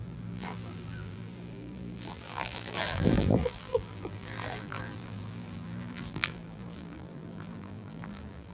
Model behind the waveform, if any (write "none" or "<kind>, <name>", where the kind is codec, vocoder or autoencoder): vocoder, BigVGAN v2